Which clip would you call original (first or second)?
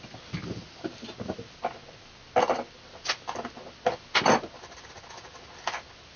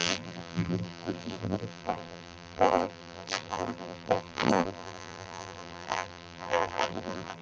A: first